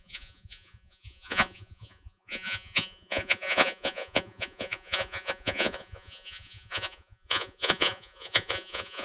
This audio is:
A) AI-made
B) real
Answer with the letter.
A